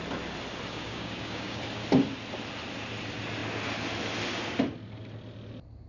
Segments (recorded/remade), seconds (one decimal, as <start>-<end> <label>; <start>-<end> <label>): 0.0-0.7 recorded; 0.7-1.6 remade; 1.6-5.9 recorded

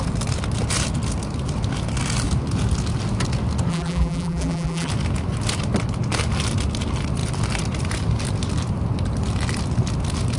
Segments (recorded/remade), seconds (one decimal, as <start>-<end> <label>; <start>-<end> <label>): 0.0-3.7 recorded; 3.7-4.9 remade; 4.9-10.4 recorded

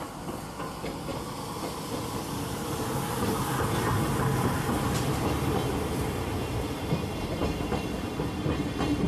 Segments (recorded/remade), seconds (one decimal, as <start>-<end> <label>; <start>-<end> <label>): 0.0-9.1 recorded

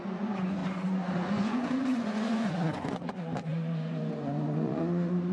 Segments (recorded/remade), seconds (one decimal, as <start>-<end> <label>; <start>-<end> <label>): 0.0-5.3 remade